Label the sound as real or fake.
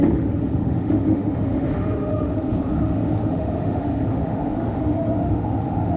fake